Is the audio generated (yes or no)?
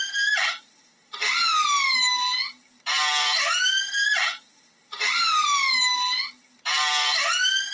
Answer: no